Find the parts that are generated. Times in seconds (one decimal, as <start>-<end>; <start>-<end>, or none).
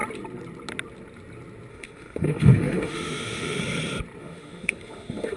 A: 1.7-3.6; 4.2-5.4